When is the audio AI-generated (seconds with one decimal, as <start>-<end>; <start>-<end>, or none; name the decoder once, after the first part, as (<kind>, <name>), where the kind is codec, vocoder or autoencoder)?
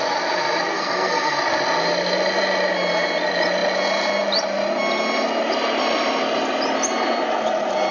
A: 0.7-1.4 (codec, SNAC)